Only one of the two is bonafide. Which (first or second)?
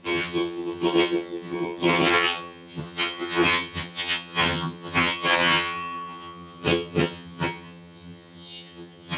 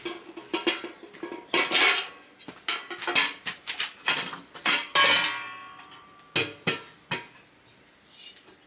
second